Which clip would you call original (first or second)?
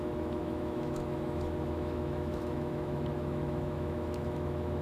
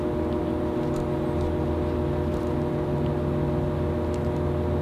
second